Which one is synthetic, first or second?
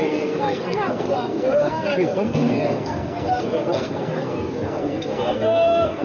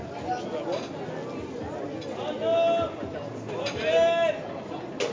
first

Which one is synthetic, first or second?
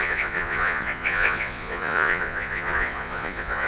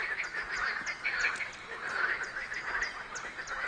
first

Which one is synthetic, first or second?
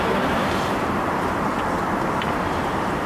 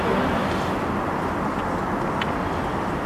first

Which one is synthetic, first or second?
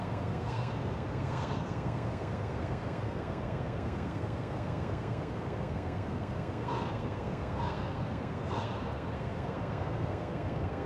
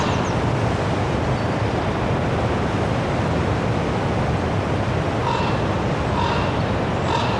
first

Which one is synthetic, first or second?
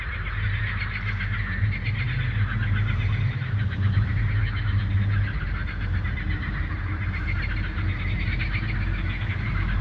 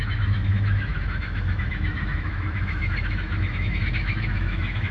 second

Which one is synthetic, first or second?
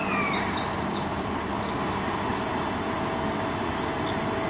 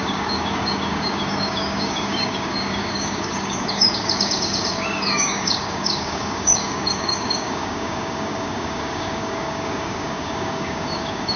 second